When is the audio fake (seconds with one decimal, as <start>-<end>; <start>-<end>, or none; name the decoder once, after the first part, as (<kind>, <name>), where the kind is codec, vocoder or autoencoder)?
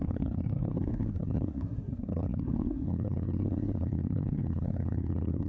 0.0-5.5 (codec, SNAC)